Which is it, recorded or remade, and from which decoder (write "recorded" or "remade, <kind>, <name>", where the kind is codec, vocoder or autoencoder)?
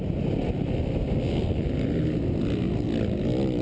recorded